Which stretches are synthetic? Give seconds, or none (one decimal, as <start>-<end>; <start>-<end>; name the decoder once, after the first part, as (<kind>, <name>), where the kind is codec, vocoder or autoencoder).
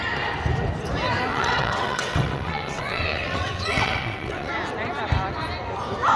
1.3-4.5 (vocoder, WaveNeXt)